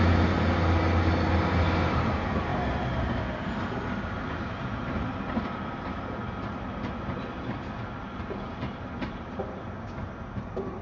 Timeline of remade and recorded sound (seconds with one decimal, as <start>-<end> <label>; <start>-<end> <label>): 0.0-10.8 recorded